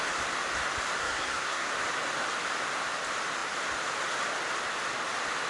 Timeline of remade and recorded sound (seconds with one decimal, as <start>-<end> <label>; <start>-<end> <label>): 0.0-1.0 recorded; 1.0-1.7 remade; 1.7-5.5 recorded